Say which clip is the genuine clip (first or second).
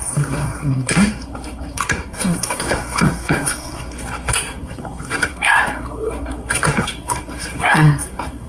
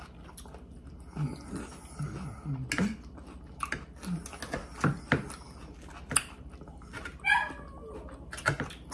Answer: second